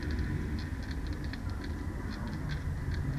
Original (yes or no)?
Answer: yes